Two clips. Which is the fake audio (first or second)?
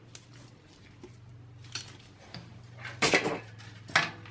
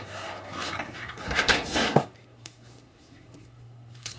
second